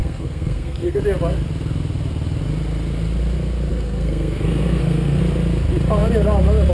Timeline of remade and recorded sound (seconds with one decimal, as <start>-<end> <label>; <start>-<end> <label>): 0.0-1.0 remade; 1.0-3.7 recorded; 3.7-5.2 remade; 5.2-6.7 recorded